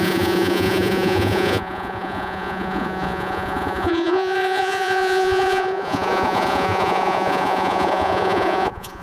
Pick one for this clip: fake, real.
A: fake